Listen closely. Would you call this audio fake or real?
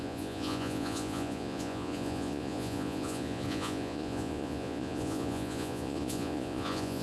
fake